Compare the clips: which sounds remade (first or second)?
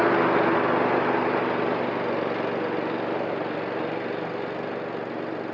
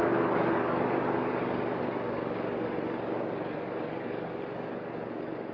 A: second